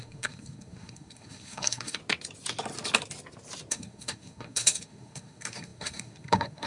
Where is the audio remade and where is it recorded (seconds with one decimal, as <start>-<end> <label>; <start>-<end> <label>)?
0.0-2.0 remade; 2.0-3.7 recorded; 3.7-6.7 remade